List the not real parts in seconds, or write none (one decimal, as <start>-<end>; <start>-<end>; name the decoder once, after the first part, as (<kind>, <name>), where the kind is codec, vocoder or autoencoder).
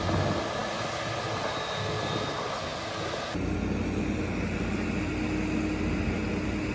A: none